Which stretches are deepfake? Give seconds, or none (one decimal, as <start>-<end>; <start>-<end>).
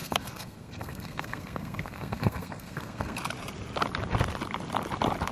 0.0-3.2